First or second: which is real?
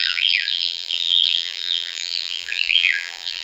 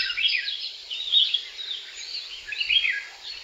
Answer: second